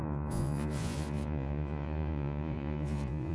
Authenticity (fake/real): fake